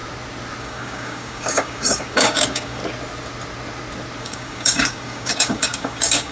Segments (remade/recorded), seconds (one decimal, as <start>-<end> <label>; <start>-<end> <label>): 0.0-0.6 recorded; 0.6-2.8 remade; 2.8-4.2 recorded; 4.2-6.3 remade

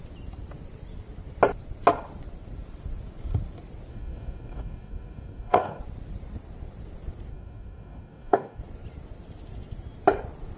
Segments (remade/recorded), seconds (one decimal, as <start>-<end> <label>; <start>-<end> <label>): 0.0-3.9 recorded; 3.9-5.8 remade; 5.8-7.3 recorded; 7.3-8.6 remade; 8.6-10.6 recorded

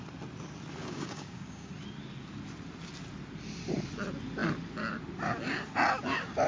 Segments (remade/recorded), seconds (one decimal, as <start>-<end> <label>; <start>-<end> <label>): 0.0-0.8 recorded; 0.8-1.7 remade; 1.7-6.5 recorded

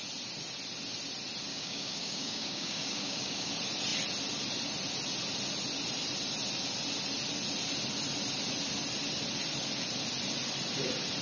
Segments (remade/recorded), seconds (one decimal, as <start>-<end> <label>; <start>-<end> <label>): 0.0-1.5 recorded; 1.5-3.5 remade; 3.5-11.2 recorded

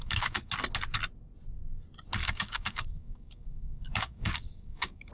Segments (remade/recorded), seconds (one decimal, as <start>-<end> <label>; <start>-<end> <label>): 0.0-0.5 remade; 0.5-2.2 recorded; 2.2-5.1 remade

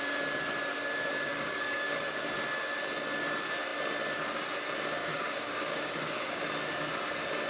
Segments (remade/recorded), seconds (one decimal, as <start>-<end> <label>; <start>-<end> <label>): 0.0-1.1 recorded; 1.1-2.2 remade; 2.2-5.0 recorded; 5.0-6.4 remade; 6.4-7.5 recorded

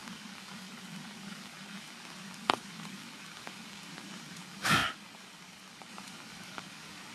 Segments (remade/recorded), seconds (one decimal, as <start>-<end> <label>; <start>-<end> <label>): 0.0-7.1 remade